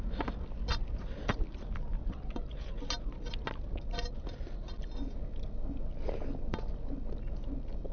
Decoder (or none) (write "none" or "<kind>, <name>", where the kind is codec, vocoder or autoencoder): none